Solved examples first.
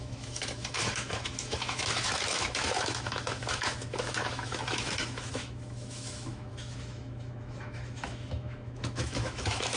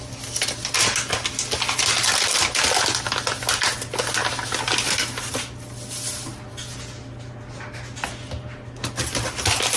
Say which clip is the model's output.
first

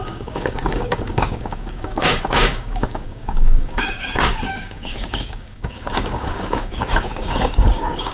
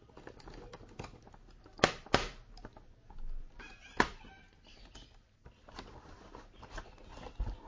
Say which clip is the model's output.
first